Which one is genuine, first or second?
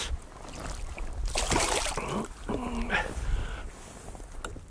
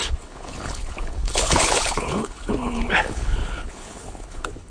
first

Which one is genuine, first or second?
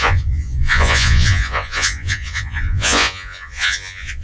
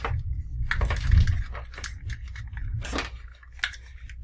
second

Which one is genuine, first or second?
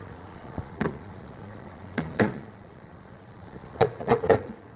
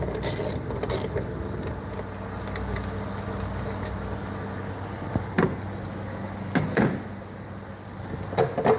second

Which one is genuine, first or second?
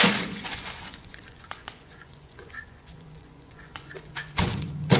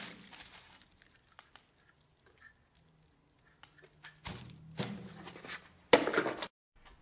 second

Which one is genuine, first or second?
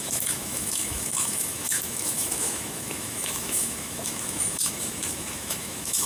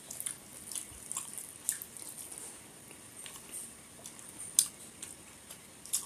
second